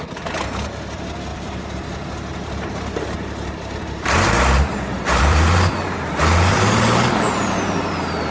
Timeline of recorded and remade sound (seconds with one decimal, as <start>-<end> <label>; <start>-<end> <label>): 0.0-1.3 recorded; 1.3-1.8 remade; 1.8-2.3 recorded; 2.3-6.8 remade; 6.8-8.3 recorded